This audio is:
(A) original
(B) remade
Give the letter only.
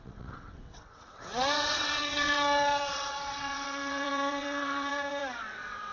B